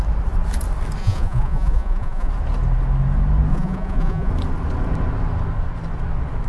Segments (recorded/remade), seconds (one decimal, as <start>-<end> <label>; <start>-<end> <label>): 0.0-1.0 recorded; 1.0-2.3 remade; 2.3-3.5 recorded; 3.5-4.3 remade; 4.3-6.5 recorded